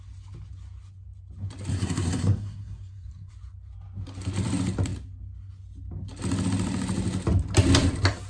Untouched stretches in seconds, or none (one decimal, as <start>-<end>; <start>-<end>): 0.0-1.7; 3.3-8.3